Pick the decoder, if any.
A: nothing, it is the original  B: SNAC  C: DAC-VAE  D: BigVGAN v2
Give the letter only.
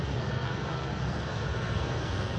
B